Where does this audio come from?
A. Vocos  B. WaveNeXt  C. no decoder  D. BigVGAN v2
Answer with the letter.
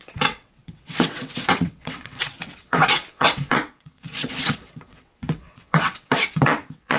B